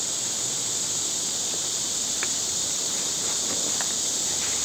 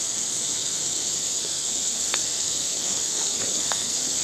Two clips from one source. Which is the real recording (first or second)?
first